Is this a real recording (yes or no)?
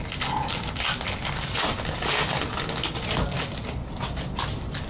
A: yes